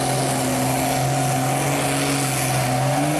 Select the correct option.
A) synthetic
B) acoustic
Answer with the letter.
B